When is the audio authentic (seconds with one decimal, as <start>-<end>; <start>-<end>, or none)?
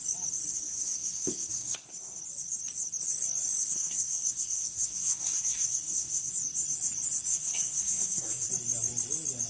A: 0.0-0.5; 2.2-3.6; 6.3-7.3; 8.5-9.5